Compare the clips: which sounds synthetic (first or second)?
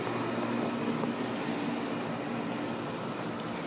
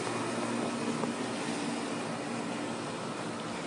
first